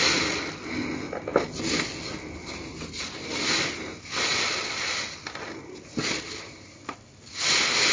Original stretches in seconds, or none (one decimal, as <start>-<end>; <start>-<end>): 0.0-7.9